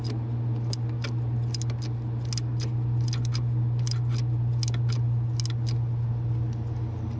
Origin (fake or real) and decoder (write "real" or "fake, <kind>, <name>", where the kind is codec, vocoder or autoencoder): real